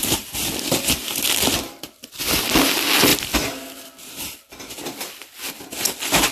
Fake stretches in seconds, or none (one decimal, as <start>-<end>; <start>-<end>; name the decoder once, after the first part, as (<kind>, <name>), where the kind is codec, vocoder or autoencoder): none